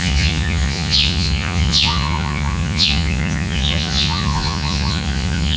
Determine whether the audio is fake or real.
fake